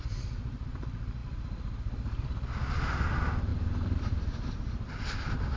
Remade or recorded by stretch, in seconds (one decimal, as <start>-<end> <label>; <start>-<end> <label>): 0.0-5.6 recorded